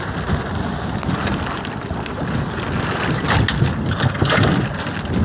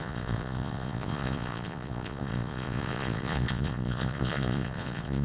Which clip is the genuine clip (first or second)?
first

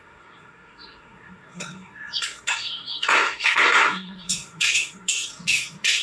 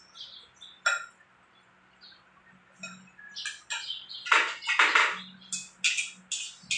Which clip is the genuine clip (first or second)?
second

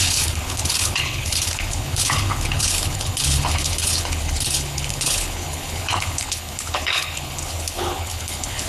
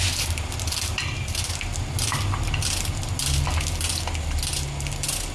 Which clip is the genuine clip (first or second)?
second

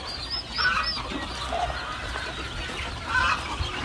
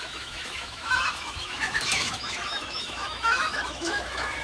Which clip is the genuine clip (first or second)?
first